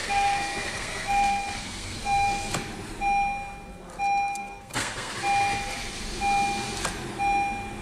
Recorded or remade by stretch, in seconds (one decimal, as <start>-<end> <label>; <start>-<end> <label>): 0.0-2.5 remade; 2.5-4.4 recorded; 4.4-5.1 remade; 5.1-7.8 recorded